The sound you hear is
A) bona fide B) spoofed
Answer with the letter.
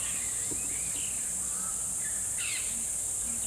A